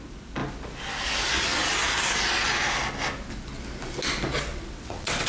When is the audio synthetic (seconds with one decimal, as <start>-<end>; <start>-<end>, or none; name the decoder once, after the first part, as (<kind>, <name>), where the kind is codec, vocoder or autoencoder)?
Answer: 4.5-5.3 (vocoder, WaveNeXt)